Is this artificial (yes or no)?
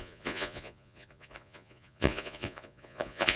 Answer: yes